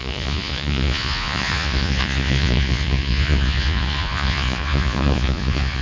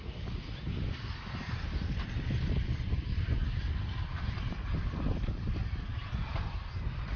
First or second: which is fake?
first